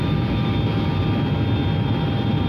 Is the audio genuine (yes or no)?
yes